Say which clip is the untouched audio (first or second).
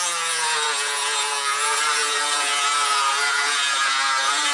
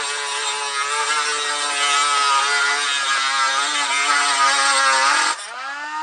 second